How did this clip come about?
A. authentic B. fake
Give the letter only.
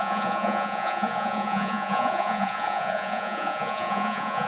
B